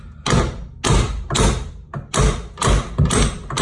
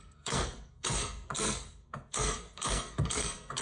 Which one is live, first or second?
first